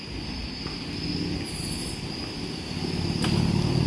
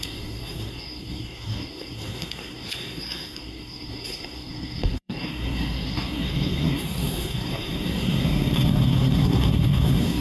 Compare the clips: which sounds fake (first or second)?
second